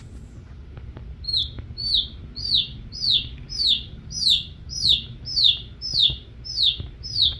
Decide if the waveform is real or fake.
real